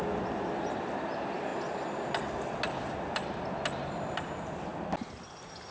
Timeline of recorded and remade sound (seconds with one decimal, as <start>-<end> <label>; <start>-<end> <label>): 0.0-5.7 recorded